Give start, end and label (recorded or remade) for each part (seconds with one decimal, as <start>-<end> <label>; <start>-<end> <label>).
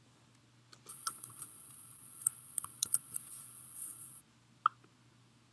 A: 0.0-0.9 recorded; 0.9-4.2 remade; 4.2-5.5 recorded